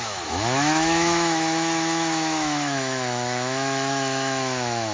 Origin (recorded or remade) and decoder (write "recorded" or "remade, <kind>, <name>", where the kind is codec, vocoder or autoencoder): remade, autoencoder, DAC-VAE